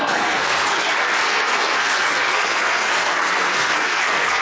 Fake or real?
fake